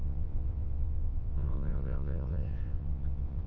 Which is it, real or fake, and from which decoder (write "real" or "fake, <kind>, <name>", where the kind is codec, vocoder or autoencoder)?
fake, vocoder, WaveNeXt